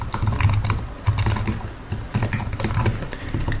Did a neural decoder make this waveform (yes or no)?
no